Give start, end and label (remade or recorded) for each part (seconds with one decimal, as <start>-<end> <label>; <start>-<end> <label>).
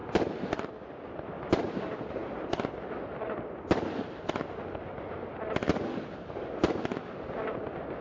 0.0-8.0 recorded